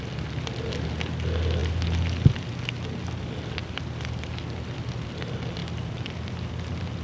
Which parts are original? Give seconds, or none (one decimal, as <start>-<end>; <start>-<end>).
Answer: 0.0-3.6; 4.9-5.6; 6.5-7.0